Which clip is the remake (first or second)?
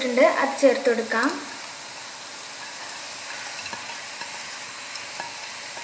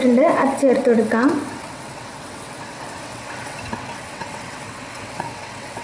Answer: second